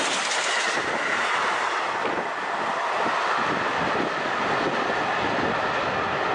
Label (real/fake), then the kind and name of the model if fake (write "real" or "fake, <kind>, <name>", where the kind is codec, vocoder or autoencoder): real